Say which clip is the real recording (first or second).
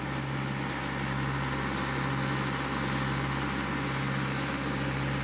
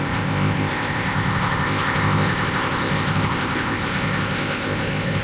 first